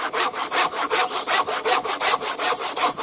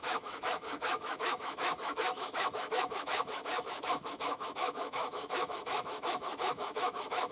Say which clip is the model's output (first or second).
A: second